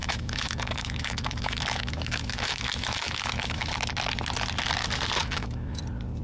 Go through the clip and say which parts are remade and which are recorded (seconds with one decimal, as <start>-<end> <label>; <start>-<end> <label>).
0.0-3.7 remade; 3.7-5.2 recorded; 5.2-5.8 remade; 5.8-6.2 recorded